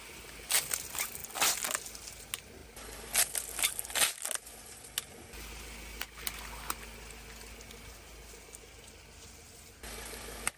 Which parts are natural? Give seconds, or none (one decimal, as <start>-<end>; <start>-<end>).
0.0-10.6